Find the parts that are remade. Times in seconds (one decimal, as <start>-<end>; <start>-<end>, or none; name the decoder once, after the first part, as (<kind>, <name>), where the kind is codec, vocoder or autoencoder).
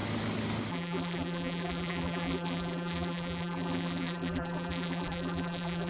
0.7-5.9 (vocoder, BigVGAN v2)